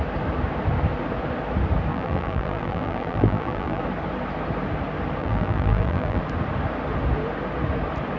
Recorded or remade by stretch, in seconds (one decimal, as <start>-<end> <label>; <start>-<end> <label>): 0.0-1.9 recorded; 1.9-3.8 remade; 3.8-5.2 recorded; 5.2-6.2 remade; 6.2-8.2 recorded